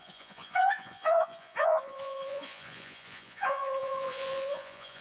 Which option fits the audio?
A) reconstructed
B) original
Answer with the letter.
A